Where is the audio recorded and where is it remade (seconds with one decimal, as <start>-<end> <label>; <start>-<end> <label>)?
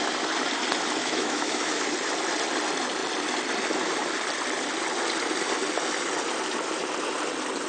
0.0-1.0 recorded; 1.0-1.8 remade; 1.8-7.7 recorded